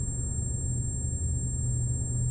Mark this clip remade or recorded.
recorded